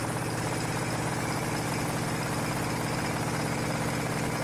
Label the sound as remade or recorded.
recorded